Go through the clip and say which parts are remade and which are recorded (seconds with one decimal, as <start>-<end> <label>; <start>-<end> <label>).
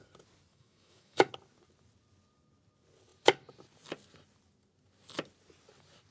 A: 0.0-0.5 recorded; 0.5-1.3 remade; 1.3-6.1 recorded